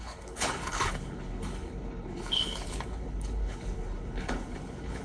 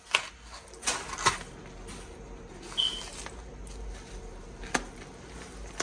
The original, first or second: second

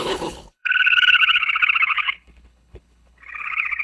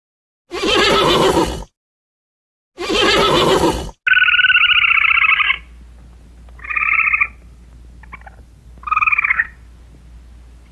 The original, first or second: second